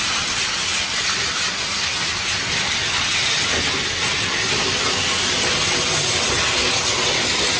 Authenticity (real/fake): real